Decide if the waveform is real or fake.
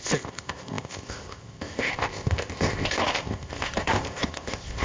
fake